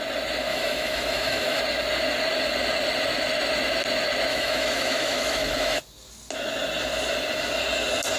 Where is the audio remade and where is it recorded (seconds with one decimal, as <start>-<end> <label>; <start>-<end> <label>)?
0.0-0.5 recorded; 0.5-1.6 remade; 1.6-4.3 recorded; 4.3-5.8 remade; 5.8-8.2 recorded